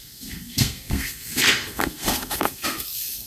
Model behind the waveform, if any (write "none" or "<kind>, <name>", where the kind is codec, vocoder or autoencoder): codec, SNAC